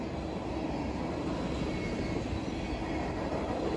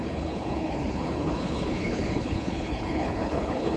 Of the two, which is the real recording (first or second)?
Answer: first